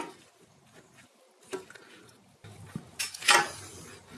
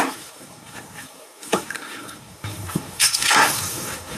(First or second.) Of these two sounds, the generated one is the second